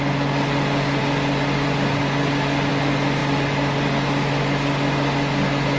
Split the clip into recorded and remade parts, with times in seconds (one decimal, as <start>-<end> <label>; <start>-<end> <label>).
0.0-5.8 recorded